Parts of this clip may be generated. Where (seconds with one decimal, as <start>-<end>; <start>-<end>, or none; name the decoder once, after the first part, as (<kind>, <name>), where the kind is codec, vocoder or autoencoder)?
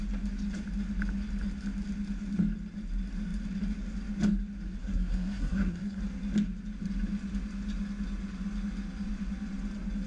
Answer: 4.8-6.0 (codec, SNAC)